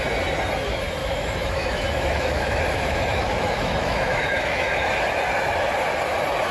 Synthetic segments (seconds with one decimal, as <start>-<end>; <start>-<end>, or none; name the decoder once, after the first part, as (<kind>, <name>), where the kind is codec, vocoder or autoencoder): 1.0-4.9 (autoencoder, DAC-VAE)